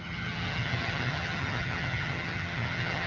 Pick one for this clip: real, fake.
fake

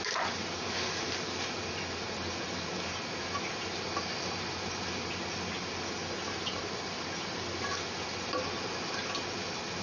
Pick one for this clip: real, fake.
real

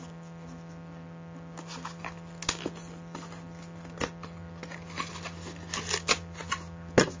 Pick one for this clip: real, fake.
real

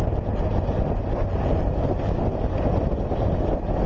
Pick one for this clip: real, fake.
real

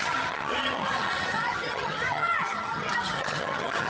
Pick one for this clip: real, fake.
fake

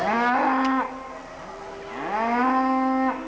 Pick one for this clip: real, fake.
real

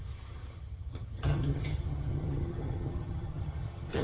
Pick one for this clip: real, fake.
fake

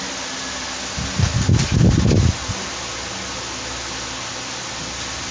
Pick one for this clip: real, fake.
real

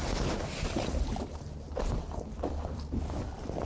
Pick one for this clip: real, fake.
real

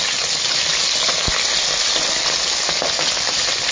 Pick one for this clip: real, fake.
real